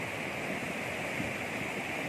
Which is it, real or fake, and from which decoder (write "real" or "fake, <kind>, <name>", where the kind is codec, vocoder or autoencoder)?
real